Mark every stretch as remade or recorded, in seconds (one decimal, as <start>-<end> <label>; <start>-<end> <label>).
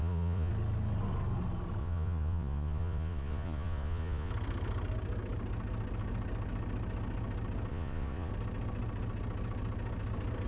0.0-0.5 remade; 0.5-1.8 recorded; 1.8-4.3 remade; 4.3-7.7 recorded; 7.7-8.3 remade; 8.3-10.5 recorded